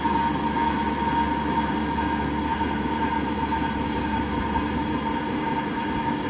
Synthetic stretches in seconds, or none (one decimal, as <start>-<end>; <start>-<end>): 2.5-6.3